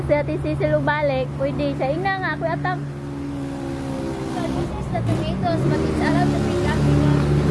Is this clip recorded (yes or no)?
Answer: yes